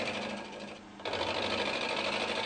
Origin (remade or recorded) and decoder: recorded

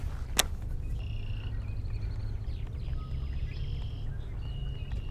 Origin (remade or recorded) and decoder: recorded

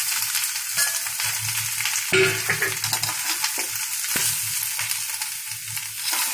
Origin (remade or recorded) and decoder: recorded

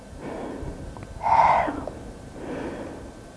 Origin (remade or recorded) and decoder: recorded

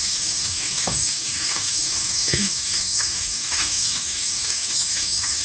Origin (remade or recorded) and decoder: remade, codec, DAC